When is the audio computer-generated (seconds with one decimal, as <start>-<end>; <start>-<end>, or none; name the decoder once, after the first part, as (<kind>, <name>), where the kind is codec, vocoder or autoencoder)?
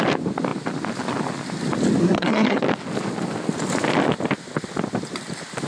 2.0-2.6 (codec, SNAC)